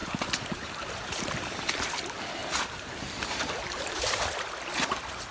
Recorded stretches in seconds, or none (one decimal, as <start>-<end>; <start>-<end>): 1.4-2.4; 4.2-5.3